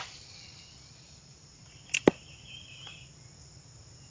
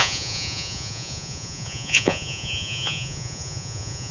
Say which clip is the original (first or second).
first